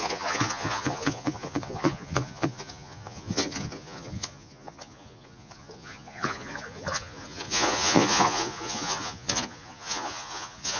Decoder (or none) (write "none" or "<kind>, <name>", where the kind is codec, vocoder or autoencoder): vocoder, Vocos